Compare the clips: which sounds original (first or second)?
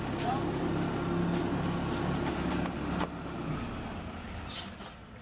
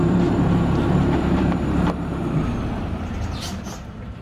first